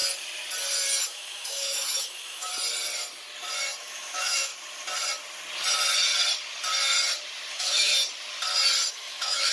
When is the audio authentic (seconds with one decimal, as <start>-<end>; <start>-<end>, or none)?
0.0-1.0; 2.5-3.8; 4.5-7.5; 7.9-8.9